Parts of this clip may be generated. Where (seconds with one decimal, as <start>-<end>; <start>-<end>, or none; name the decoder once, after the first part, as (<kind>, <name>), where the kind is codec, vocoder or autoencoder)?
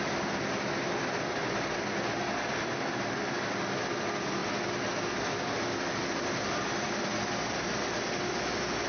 none